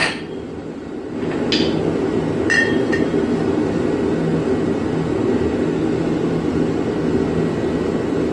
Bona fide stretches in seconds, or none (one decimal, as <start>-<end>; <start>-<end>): 0.0-8.3